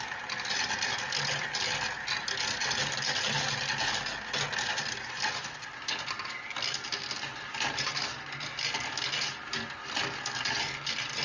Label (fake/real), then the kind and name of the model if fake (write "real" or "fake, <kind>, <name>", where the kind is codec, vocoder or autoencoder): real